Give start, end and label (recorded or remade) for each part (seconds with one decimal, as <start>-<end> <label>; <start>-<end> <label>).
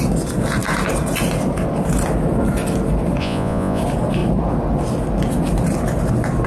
0.0-3.2 recorded; 3.2-3.8 remade; 3.8-6.5 recorded